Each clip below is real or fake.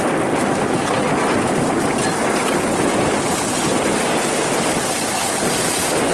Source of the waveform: real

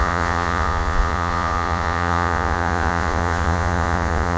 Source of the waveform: fake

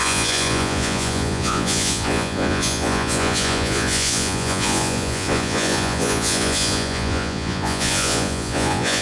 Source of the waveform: fake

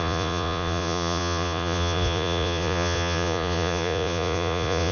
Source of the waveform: fake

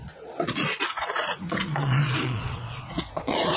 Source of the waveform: fake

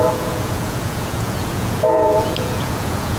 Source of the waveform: fake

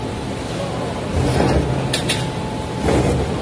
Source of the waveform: real